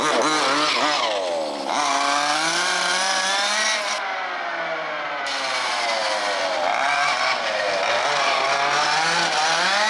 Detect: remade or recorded recorded